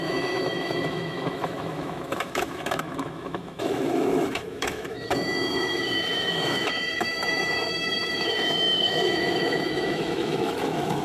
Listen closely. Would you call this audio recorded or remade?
remade